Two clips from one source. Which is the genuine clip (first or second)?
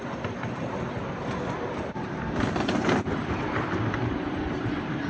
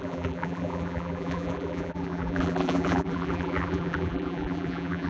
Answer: first